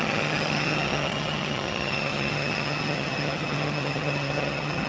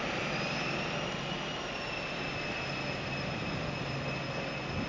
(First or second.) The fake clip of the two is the first